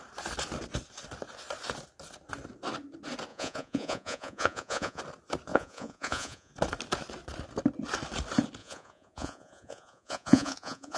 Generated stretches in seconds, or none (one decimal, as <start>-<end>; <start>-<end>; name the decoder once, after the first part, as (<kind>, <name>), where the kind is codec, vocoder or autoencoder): 3.3-5.0 (vocoder, Vocos); 5.5-6.5; 8.6-11.0